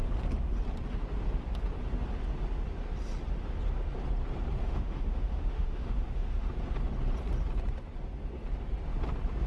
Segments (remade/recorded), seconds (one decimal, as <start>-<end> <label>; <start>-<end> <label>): 0.0-4.6 recorded; 4.6-6.5 remade; 6.5-9.5 recorded